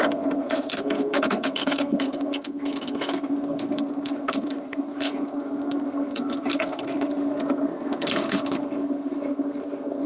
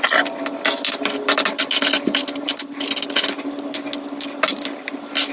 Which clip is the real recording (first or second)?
second